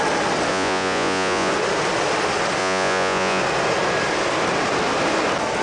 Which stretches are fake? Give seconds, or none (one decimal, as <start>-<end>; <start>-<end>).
0.5-1.5; 2.6-3.4